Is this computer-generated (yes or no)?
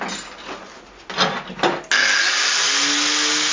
no